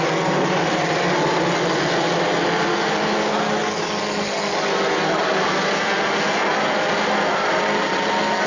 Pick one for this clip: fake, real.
real